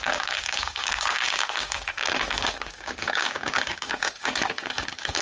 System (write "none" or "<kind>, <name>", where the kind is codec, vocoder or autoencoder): codec, DAC